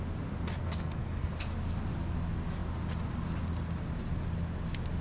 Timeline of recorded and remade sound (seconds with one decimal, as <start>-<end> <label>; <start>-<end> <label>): 0.0-0.6 recorded; 0.6-1.3 remade; 1.3-5.0 recorded